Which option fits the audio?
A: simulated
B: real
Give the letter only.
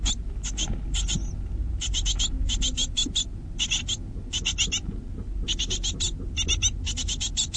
B